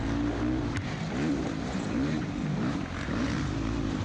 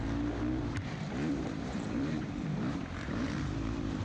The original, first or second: first